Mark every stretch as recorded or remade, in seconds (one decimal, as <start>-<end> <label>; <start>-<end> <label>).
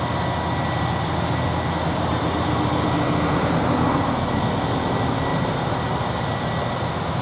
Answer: 0.0-7.2 recorded